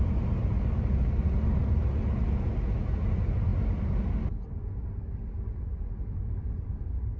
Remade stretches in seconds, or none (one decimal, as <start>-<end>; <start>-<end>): none